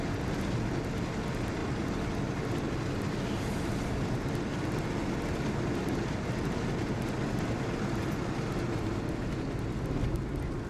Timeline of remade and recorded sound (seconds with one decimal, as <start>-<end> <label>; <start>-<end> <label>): 0.0-10.7 recorded